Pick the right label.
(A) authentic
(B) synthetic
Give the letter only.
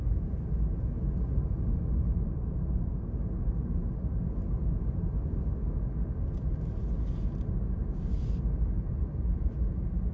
A